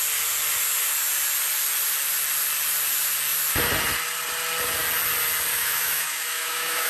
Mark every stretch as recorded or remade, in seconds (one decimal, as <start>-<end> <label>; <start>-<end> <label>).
0.0-5.5 recorded; 5.5-6.9 remade